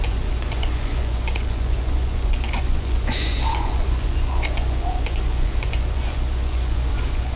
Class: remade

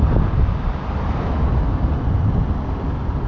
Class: recorded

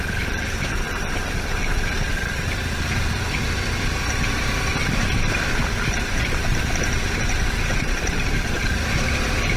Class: remade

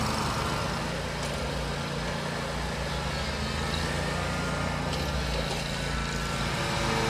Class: recorded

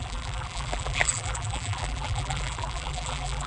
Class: remade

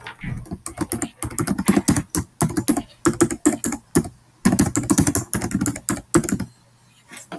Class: recorded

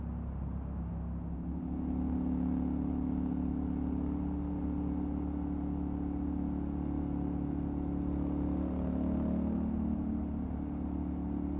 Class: recorded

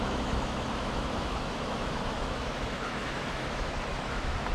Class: remade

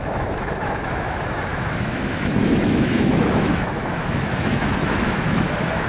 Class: remade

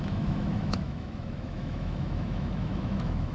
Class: remade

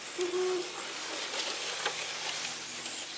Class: recorded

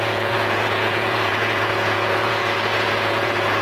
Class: remade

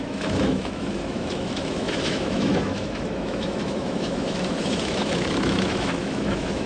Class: remade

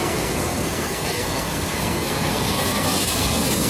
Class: remade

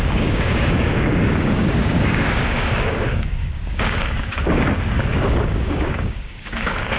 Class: remade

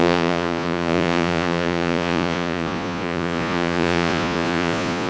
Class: remade